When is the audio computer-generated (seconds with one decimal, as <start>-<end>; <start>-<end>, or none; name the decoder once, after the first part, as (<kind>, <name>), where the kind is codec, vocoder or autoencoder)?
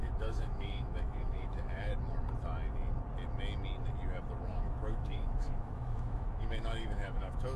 0.0-1.9 (autoencoder, DAC-VAE); 4.5-7.6